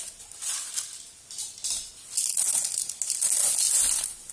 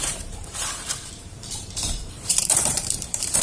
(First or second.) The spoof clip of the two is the second